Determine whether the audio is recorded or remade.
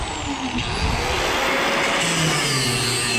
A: recorded